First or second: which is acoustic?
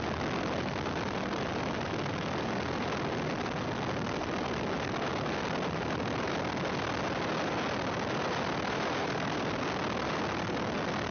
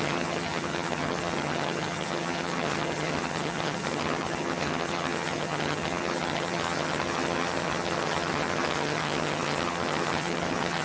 first